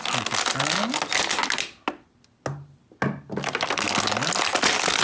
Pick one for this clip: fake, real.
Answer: real